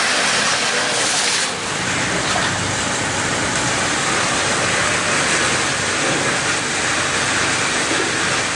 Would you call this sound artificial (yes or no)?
no